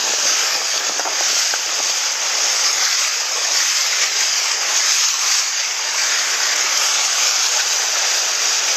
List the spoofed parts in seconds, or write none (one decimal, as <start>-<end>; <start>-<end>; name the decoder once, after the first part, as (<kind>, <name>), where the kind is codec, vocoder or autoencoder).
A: 0.0-1.4 (codec, DAC); 2.5-7.6